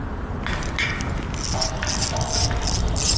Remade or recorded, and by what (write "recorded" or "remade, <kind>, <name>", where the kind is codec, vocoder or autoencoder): recorded